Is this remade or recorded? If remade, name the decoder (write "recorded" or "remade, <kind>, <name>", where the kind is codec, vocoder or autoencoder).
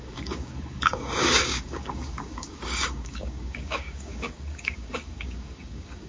remade, codec, DAC